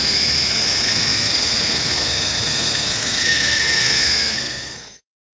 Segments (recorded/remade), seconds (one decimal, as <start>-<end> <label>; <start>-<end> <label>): 0.0-5.4 remade